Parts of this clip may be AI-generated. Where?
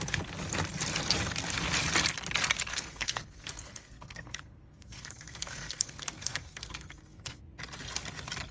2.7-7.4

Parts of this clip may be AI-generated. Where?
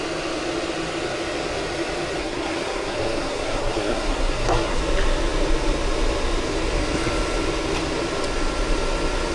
2.2-4.8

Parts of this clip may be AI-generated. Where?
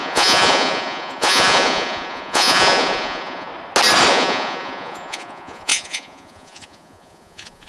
0.0-3.5; 4.1-7.7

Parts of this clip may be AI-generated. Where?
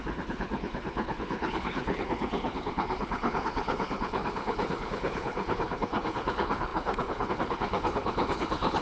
0.0-8.8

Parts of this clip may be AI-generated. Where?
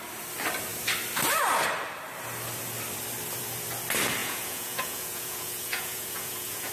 4.2-6.7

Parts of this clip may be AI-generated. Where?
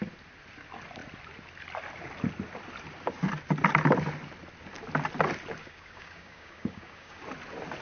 5.6-7.2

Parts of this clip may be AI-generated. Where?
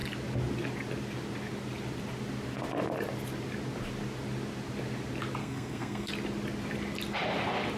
5.4-6.1